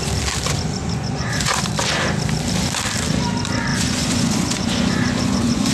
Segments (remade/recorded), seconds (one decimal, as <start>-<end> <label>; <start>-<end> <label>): 0.0-0.8 recorded; 0.8-1.6 remade; 1.6-3.7 recorded; 3.7-5.7 remade